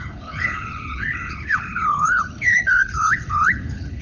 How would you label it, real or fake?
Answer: fake